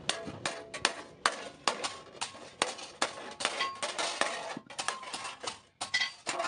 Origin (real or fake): real